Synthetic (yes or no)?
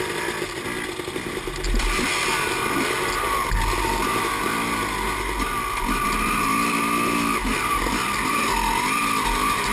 no